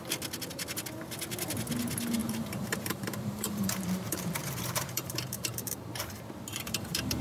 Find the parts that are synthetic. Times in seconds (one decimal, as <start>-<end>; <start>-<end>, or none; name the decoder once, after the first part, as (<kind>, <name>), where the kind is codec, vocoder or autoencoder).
2.2-6.0 (vocoder, BigVGAN v2); 6.5-7.2